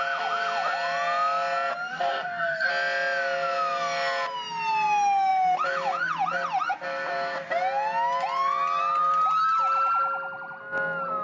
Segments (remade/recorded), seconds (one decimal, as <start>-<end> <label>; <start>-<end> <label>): 0.0-1.9 recorded; 1.9-2.7 remade; 2.7-11.2 recorded